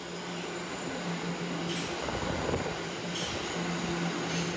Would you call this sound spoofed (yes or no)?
no